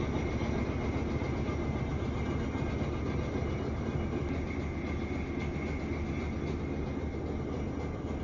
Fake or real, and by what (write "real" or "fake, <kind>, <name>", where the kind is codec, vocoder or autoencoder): real